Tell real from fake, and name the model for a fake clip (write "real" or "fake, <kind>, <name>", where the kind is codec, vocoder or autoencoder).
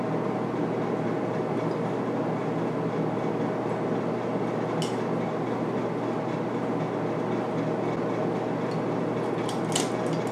real